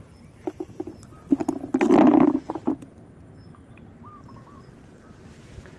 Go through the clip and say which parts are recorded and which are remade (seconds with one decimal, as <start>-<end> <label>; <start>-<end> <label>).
0.0-5.8 recorded